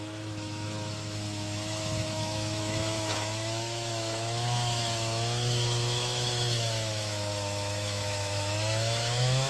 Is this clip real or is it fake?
fake